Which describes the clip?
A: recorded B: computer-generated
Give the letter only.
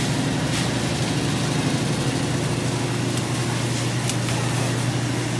A